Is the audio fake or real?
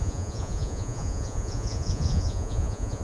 fake